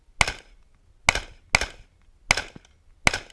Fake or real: real